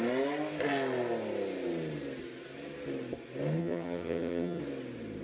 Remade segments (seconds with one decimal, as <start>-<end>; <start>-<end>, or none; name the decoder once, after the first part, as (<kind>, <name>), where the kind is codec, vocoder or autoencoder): 3.6-4.6 (vocoder, HiFi-GAN)